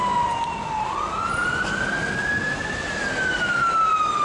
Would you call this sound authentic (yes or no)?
yes